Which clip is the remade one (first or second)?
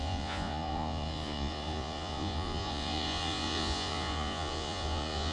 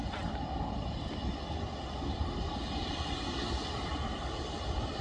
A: first